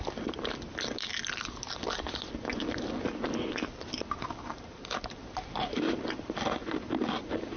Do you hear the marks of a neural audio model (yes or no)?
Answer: no